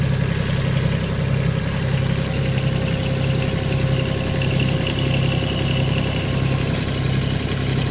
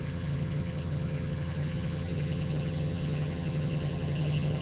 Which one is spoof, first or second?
second